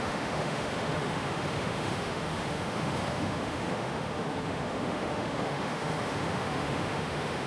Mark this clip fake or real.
fake